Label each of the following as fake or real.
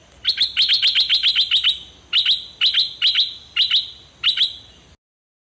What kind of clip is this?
real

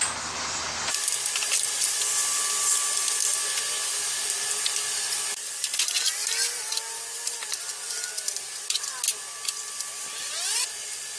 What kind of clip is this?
real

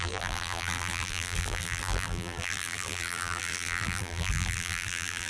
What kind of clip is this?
fake